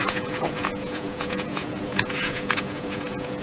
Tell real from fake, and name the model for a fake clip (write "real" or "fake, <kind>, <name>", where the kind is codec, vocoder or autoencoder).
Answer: fake, vocoder, Vocos